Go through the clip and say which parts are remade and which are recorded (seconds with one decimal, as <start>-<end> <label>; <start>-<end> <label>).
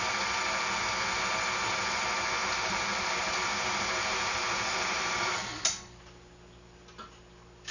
0.0-2.4 recorded; 2.4-5.5 remade; 5.5-7.7 recorded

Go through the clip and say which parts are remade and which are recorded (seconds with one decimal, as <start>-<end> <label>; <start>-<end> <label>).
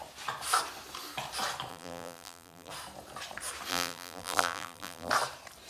0.0-1.7 recorded; 1.7-2.7 remade; 2.7-3.7 recorded; 3.7-5.1 remade; 5.1-5.7 recorded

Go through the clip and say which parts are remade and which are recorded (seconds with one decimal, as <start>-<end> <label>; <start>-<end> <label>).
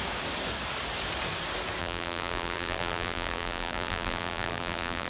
0.0-1.8 recorded; 1.8-5.1 remade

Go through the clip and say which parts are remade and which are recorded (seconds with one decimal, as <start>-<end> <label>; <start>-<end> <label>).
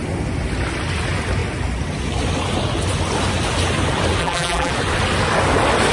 0.0-4.2 recorded; 4.2-4.7 remade; 4.7-5.9 recorded